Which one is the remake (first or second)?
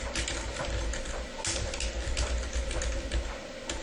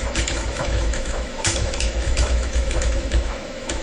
second